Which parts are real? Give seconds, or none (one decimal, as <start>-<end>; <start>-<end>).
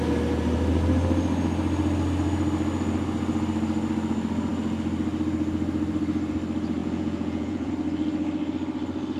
0.0-6.8; 7.7-9.2